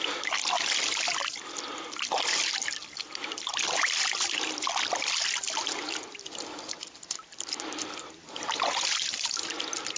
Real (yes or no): no